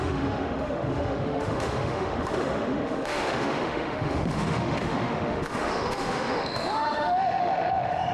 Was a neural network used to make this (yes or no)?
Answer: yes